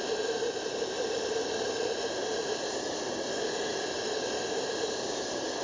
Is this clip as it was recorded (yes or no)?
yes